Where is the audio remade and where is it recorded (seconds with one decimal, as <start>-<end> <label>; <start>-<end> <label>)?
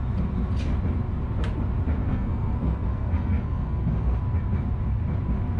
0.0-2.0 recorded; 2.0-4.2 remade; 4.2-5.6 recorded